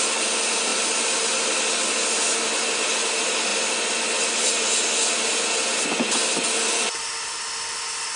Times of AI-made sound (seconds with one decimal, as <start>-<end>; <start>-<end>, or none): none